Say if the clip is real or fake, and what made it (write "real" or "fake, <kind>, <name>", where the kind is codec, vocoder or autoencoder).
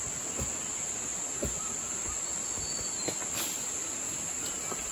real